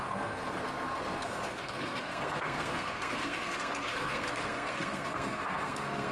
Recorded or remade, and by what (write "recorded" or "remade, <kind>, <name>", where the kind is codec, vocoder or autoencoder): remade, codec, SNAC